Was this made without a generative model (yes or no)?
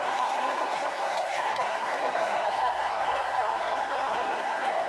no